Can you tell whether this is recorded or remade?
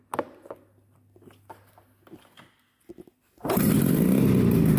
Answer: recorded